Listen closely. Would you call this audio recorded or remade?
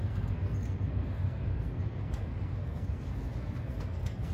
remade